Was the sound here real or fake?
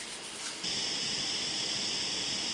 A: real